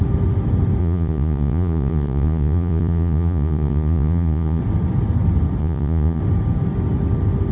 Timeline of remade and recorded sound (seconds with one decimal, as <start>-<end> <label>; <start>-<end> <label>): 0.0-0.8 recorded; 0.8-4.6 remade; 4.6-5.6 recorded; 5.6-6.2 remade; 6.2-7.5 recorded